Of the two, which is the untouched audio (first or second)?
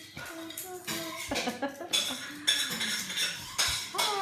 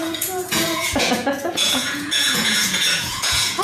first